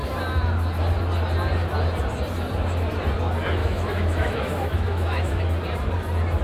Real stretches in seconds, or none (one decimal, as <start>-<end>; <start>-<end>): 0.0-3.6; 5.4-6.4